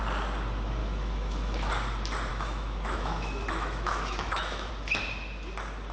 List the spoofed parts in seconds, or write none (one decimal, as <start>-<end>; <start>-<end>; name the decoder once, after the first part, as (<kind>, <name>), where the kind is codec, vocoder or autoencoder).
0.8-1.7 (autoencoder, DAC-VAE); 2.3-4.7